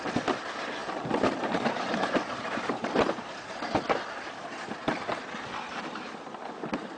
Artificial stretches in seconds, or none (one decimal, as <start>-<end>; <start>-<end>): 0.8-3.7